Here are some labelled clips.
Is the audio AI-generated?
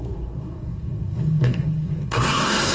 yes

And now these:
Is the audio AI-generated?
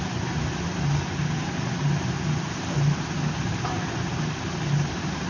no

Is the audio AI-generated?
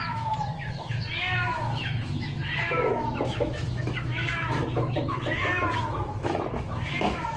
yes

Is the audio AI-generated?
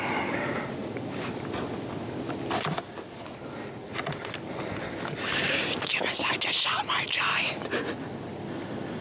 no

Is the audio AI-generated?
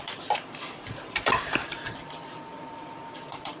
yes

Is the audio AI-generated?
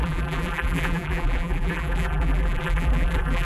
yes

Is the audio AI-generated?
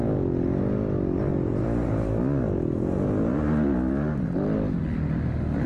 no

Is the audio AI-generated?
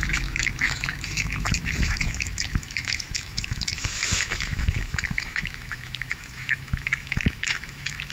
yes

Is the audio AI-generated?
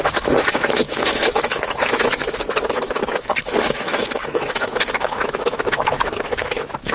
yes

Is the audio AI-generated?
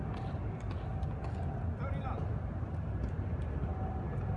no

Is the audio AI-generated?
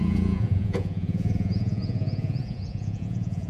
yes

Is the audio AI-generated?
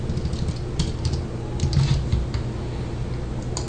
no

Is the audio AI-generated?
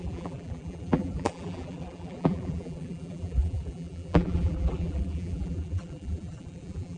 yes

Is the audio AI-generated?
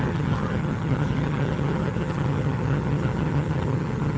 yes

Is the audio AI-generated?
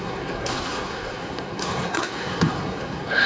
yes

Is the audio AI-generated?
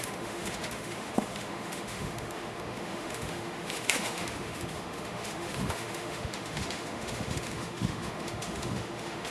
yes